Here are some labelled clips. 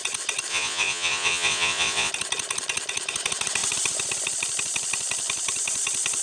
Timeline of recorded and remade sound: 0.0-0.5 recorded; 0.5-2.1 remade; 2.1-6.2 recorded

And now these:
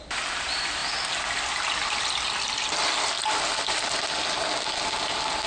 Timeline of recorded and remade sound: 0.0-5.5 recorded

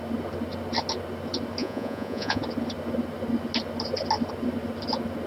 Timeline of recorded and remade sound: 0.0-1.6 recorded; 1.6-2.4 remade; 2.4-5.3 recorded